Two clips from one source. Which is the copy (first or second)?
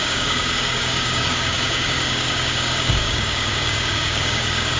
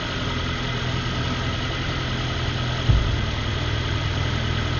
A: first